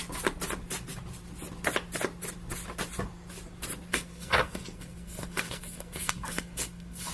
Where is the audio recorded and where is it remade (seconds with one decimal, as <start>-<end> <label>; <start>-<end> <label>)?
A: 0.0-3.9 recorded; 3.9-7.1 remade